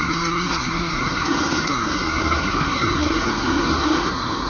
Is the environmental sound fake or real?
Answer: fake